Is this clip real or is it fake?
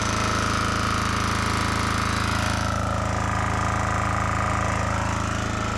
real